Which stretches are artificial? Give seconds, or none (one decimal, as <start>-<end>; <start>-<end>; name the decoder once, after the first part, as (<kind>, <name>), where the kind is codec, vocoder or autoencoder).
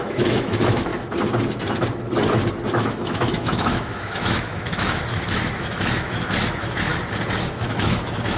0.0-0.9 (autoencoder, DAC-VAE); 2.7-6.9; 7.4-8.4